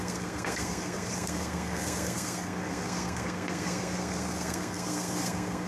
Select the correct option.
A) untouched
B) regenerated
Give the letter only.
B